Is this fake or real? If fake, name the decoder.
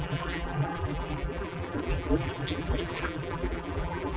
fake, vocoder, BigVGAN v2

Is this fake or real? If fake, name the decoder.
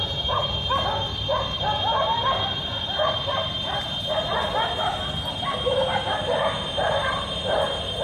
real